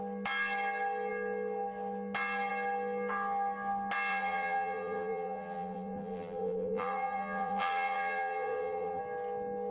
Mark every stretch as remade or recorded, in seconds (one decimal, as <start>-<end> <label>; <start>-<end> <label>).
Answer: 0.0-4.1 recorded; 4.1-9.0 remade; 9.0-9.7 recorded